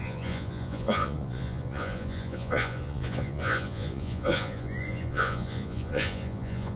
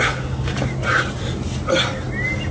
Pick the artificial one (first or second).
first